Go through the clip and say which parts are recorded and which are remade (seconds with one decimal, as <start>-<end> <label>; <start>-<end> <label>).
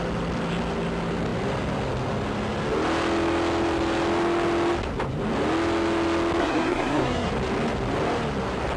0.0-6.4 recorded; 6.4-7.3 remade; 7.3-8.8 recorded